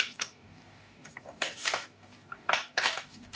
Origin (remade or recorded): remade